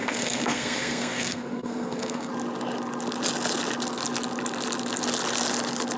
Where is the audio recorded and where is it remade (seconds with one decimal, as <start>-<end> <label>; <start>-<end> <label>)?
0.0-2.3 remade; 2.3-6.0 recorded